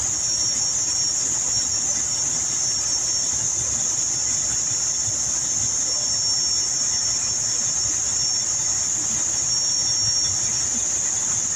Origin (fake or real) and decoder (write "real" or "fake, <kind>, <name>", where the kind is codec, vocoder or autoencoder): real